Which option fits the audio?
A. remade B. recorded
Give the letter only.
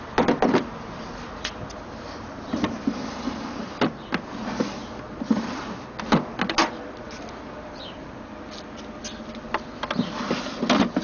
B